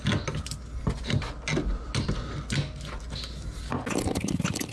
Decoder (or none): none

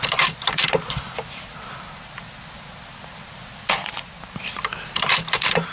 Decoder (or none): none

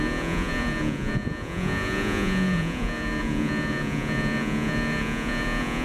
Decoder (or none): vocoder, Vocos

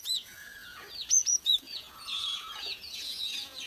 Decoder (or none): vocoder, Vocos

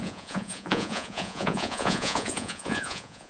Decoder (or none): vocoder, Vocos